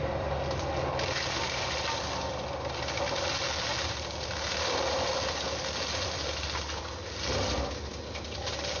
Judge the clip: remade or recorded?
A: recorded